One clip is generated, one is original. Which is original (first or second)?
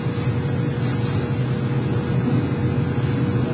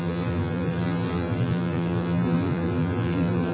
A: first